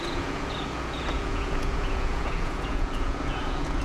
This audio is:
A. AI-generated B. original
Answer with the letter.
A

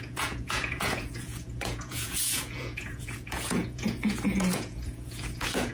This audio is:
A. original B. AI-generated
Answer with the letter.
B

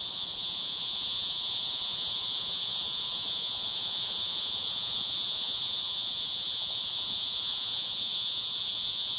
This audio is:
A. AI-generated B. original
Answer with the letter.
A